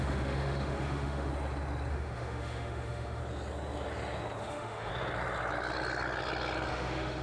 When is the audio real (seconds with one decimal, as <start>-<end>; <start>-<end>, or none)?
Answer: 1.3-1.9; 3.2-4.4; 4.9-6.7